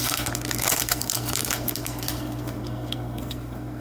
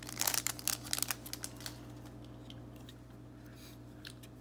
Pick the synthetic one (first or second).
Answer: first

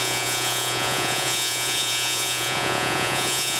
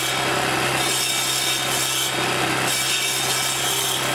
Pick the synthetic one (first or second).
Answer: first